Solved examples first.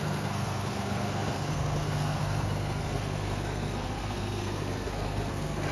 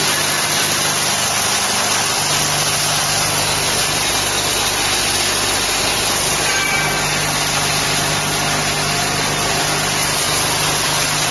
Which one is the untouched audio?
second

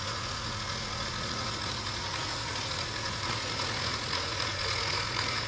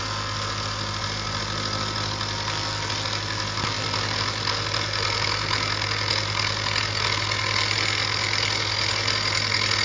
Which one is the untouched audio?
second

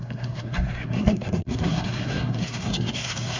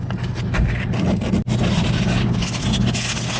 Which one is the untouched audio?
second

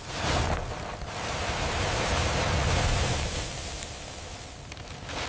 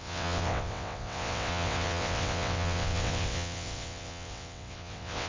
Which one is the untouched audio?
first